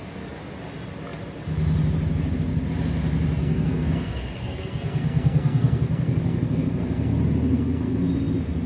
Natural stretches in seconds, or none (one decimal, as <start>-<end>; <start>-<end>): 0.0-3.4; 7.1-7.5; 8.1-8.7